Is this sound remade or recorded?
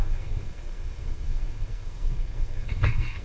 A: remade